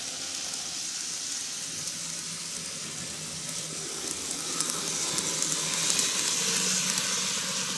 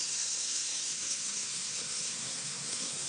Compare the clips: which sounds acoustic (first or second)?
first